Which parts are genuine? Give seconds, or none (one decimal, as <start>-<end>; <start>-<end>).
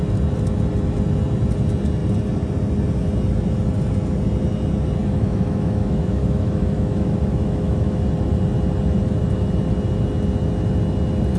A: 0.0-5.0; 8.0-11.4